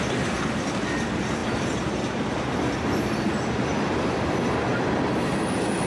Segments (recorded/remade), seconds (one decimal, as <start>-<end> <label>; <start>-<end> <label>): 0.0-5.9 recorded